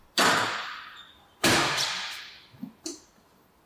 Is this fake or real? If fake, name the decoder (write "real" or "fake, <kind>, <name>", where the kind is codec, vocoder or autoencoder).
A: fake, vocoder, BigVGAN v2